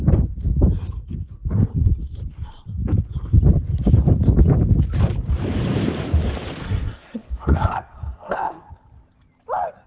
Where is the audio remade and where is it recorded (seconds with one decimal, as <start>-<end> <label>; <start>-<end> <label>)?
0.0-6.6 recorded; 6.6-8.7 remade; 8.7-9.9 recorded